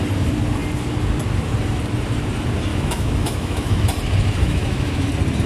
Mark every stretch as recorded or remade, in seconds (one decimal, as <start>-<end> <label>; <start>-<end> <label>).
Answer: 0.0-2.7 recorded; 2.7-3.8 remade; 3.8-4.4 recorded; 4.4-5.1 remade; 5.1-5.5 recorded